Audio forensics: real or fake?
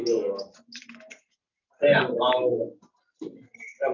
real